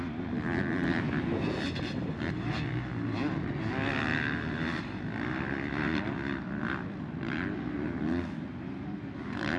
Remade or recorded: recorded